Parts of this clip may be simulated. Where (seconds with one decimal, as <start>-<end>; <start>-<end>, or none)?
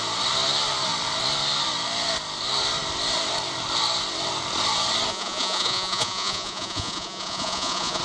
5.1-8.0